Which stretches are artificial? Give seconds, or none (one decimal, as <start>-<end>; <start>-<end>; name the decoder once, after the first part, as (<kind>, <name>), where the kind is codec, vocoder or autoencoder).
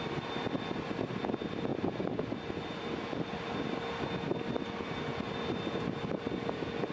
none